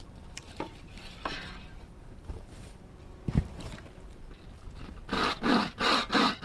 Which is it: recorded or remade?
remade